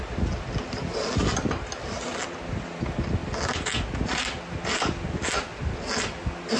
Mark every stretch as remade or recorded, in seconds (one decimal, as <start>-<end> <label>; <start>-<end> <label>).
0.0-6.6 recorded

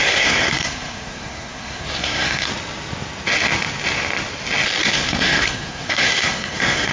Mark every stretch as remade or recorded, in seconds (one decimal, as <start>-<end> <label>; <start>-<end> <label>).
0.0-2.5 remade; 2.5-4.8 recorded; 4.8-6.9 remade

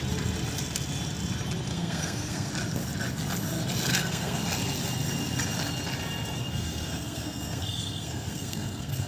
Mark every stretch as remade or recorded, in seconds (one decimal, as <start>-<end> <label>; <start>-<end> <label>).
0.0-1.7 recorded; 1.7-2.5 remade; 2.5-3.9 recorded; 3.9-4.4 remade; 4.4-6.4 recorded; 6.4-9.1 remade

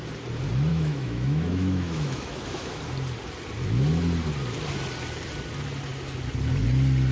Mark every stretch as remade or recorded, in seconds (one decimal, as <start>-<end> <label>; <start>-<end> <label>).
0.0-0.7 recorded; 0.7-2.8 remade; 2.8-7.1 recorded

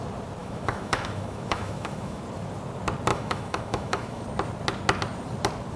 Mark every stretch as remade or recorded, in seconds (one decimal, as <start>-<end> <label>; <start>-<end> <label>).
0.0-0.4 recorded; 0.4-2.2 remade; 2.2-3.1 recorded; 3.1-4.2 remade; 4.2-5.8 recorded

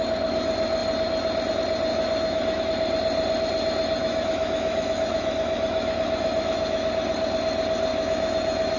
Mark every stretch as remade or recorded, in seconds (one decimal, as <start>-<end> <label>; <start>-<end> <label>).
0.0-1.9 recorded; 1.9-2.6 remade; 2.6-4.0 recorded; 4.0-6.9 remade; 6.9-7.9 recorded; 7.9-8.8 remade

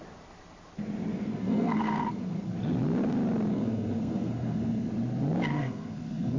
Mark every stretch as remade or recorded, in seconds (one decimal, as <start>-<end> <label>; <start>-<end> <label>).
0.0-1.1 recorded; 1.1-2.5 remade; 2.5-3.5 recorded; 3.5-4.9 remade; 4.9-5.5 recorded; 5.5-6.4 remade